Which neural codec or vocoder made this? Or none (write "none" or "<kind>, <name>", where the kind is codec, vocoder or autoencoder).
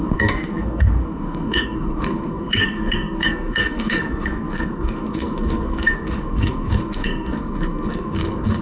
codec, SNAC